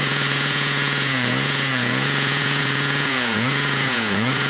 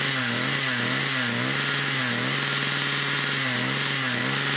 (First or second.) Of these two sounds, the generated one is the first